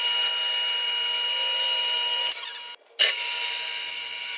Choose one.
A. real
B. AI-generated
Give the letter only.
A